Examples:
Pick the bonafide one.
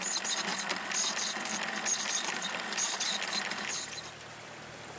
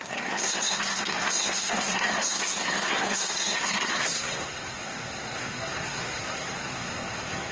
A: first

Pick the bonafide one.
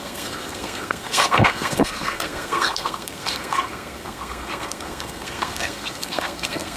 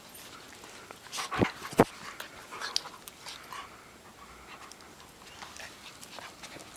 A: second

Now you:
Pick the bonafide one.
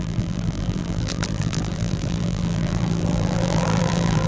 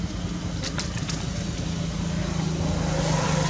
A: second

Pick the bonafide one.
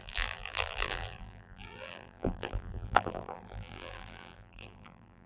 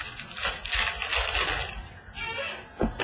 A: second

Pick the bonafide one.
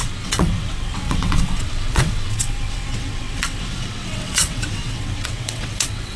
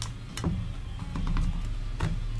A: second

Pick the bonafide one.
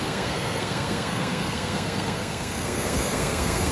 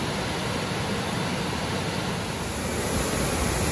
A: second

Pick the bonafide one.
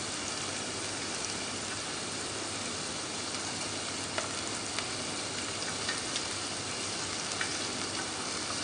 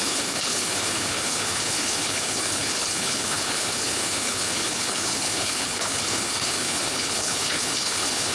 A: first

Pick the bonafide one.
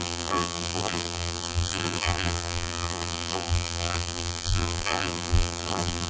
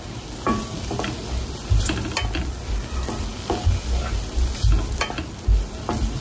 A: second